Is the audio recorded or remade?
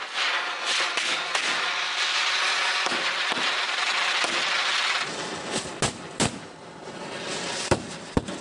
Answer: recorded